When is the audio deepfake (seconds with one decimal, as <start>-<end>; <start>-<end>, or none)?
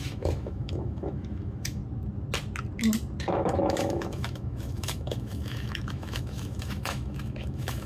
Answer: 0.0-1.8; 3.2-7.9